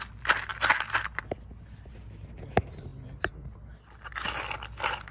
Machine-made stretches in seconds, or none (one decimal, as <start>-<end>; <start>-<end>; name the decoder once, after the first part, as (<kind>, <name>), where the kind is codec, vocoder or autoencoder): none